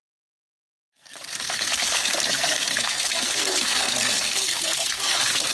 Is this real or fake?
fake